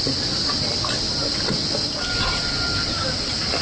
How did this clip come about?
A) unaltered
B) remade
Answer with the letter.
A